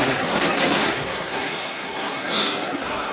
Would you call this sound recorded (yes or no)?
no